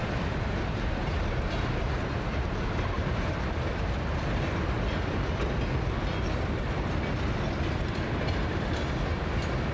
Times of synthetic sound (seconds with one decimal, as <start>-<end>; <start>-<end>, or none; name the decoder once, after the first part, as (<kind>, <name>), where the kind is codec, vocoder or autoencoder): 0.0-3.4 (vocoder, BigVGAN v2)